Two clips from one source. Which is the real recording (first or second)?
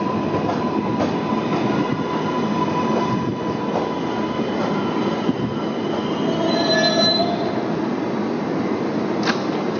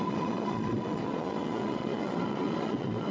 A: first